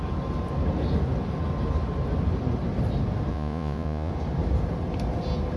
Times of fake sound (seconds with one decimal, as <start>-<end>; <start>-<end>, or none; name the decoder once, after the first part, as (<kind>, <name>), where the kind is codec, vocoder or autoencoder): 3.3-4.1 (vocoder, Vocos)